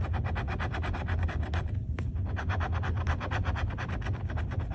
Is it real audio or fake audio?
real